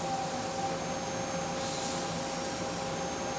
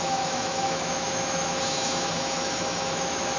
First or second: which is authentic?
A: first